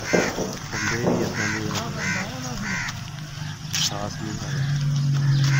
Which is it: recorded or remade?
recorded